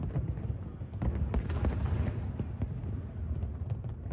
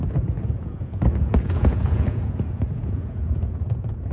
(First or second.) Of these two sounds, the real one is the first